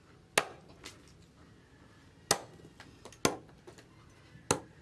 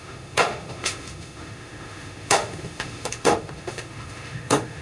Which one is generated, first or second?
second